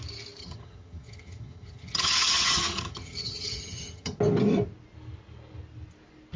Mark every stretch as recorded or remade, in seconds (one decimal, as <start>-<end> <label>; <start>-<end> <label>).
0.0-0.4 recorded; 0.4-4.2 remade; 4.2-6.4 recorded